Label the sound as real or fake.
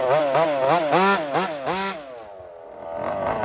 real